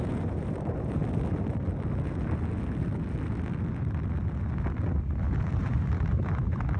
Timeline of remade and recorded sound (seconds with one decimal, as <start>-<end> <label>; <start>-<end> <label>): 0.0-1.0 remade; 1.0-5.1 recorded; 5.1-6.8 remade